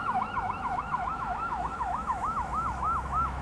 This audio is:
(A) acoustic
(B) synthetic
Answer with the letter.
B